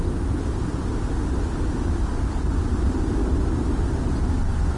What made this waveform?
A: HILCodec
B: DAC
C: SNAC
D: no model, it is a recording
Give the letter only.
D